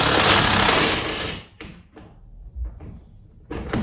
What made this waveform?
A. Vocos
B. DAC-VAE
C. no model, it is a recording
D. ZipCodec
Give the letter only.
C